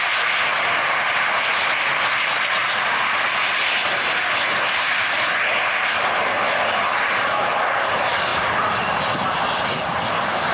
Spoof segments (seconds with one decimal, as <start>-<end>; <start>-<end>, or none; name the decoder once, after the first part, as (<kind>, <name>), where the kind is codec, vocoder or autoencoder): 0.5-1.9 (vocoder, BigVGAN v2); 2.6-3.9; 8.3-9.1